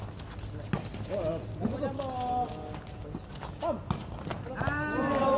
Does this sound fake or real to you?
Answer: real